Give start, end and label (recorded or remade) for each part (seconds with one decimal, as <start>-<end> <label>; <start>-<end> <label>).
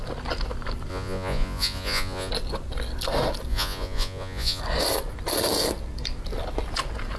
0.0-0.9 recorded; 0.9-2.3 remade; 2.3-3.5 recorded; 3.5-4.6 remade; 4.6-7.2 recorded